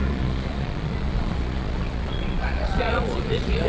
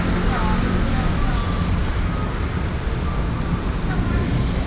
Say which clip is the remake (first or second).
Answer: first